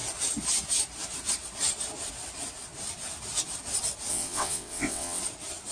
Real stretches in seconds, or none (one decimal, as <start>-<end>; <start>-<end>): 0.0-4.1; 5.2-5.7